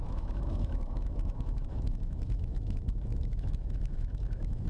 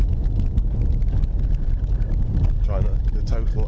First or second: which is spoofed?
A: first